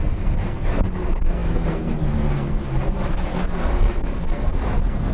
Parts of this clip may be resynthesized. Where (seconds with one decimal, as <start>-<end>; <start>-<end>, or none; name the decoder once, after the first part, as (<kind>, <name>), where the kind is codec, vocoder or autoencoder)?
0.0-2.6 (codec, SNAC); 3.1-5.1